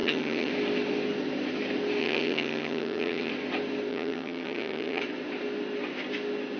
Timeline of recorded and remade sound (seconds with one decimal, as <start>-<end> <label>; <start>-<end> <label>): 0.0-0.5 remade; 0.5-2.0 recorded; 2.0-3.3 remade; 3.3-3.9 recorded; 3.9-5.0 remade; 5.0-6.6 recorded